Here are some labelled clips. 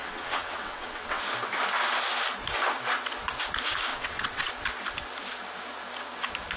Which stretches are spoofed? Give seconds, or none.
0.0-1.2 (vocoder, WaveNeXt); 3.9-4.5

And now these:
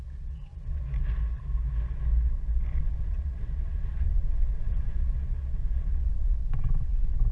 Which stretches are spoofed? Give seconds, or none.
0.0-0.8 (vocoder, WaveNeXt); 2.8-7.3

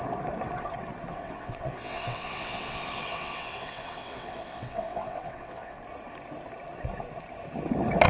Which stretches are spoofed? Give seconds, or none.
1.1-5.8 (vocoder, WaveNeXt)

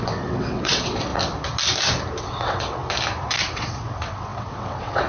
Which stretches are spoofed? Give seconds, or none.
0.0-1.1 (vocoder, WaveNeXt); 2.2-2.8; 3.4-5.1